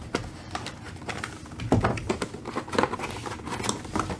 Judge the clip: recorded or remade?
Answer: recorded